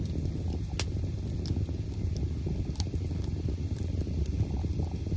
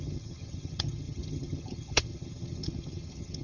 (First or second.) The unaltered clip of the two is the first